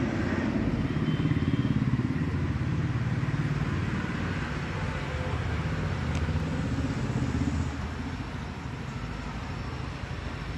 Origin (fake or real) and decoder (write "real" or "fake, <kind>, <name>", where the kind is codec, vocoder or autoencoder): real